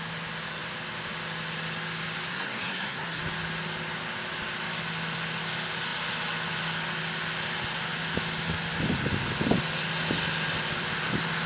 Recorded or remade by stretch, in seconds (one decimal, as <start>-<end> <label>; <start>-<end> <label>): 0.0-2.3 recorded; 2.3-3.2 remade; 3.2-11.5 recorded